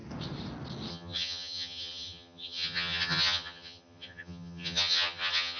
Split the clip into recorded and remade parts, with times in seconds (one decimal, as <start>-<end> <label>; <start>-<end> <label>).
0.0-0.9 recorded; 0.9-5.6 remade